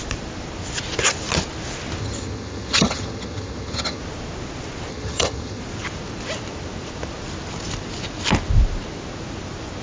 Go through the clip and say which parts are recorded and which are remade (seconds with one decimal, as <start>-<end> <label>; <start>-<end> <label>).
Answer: 0.0-2.0 recorded; 2.0-4.0 remade; 4.0-4.9 recorded; 4.9-5.6 remade; 5.6-9.8 recorded